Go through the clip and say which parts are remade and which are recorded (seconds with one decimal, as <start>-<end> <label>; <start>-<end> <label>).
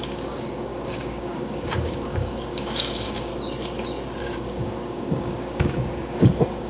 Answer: 0.0-3.3 remade; 3.3-4.2 recorded; 4.2-6.7 remade